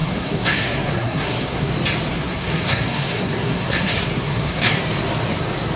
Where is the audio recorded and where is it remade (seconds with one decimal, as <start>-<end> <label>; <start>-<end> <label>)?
0.0-1.7 remade; 1.7-2.1 recorded; 2.1-4.8 remade; 4.8-5.8 recorded